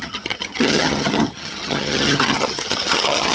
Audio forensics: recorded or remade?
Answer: remade